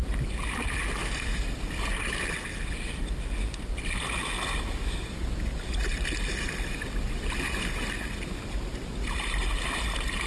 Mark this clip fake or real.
real